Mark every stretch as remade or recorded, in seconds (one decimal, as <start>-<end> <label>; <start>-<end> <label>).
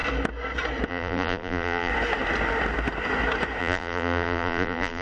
0.0-0.9 recorded; 0.9-1.9 remade; 1.9-3.6 recorded; 3.6-5.0 remade